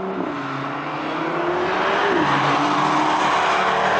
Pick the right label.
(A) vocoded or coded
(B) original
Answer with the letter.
B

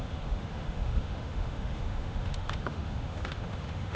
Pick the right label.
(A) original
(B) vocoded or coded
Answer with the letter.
B